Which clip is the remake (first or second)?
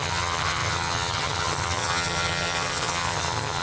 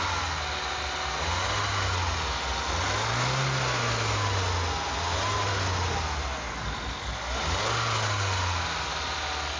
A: first